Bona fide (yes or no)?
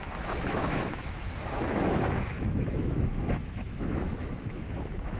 no